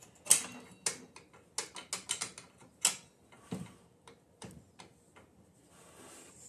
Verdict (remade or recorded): recorded